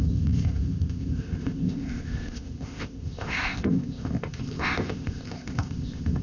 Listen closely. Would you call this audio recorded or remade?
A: remade